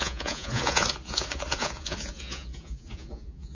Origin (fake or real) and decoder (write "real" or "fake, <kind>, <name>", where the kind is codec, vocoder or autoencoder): fake, vocoder, Vocos